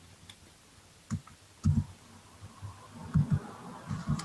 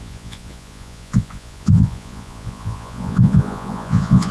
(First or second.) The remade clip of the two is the second